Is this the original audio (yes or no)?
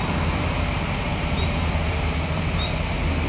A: yes